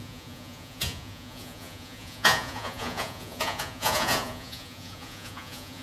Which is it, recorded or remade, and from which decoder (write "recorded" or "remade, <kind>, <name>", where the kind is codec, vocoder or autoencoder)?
remade, vocoder, Vocos